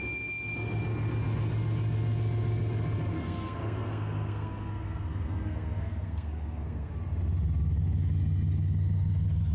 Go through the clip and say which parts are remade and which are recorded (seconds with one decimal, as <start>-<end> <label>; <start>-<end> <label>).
0.0-3.1 recorded; 3.1-6.9 remade; 6.9-9.5 recorded